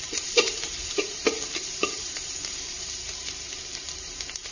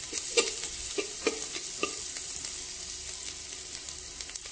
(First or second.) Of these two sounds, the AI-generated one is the first